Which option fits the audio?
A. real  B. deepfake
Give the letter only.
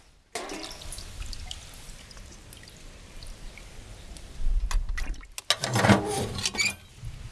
A